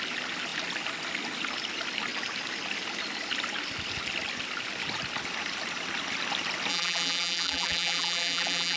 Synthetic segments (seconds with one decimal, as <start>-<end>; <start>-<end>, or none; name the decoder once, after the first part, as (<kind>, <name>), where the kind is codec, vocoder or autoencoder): 6.7-8.8 (vocoder, BigVGAN v2)